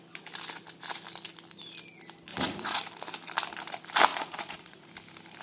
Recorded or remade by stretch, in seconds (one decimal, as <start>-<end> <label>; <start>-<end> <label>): 0.0-2.3 recorded; 2.3-2.8 remade; 2.8-4.1 recorded; 4.1-4.9 remade; 4.9-5.4 recorded